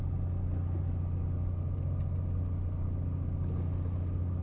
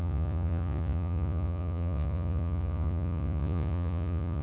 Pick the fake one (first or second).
second